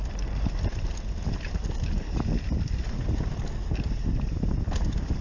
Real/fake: real